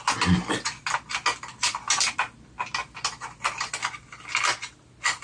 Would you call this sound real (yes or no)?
yes